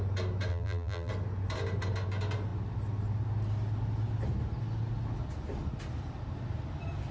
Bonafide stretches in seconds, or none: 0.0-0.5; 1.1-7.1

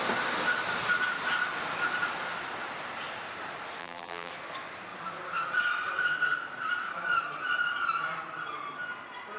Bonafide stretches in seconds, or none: 0.0-3.8; 4.3-9.4